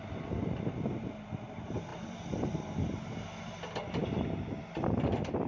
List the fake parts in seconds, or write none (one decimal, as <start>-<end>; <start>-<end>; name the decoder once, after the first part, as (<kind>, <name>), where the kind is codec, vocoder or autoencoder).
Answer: 1.9-2.6 (vocoder, BigVGAN v2)